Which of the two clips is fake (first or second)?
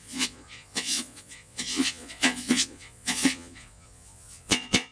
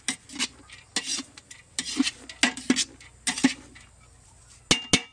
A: first